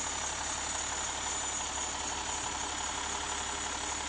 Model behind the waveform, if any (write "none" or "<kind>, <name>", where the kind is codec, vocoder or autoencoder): none